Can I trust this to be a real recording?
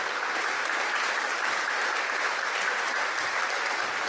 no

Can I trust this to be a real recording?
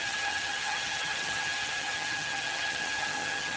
no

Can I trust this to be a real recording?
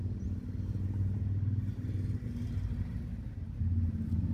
yes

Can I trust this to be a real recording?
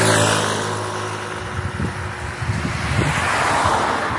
yes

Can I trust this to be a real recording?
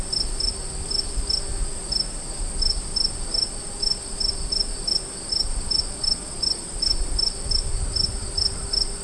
yes